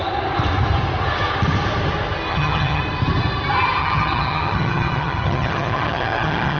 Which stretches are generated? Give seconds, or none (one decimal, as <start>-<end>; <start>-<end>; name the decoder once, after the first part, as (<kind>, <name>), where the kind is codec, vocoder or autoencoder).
2.3-2.8 (vocoder, HiFi-GAN); 3.8-6.6